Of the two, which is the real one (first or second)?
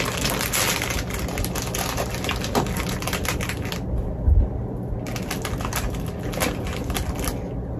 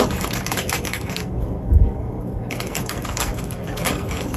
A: first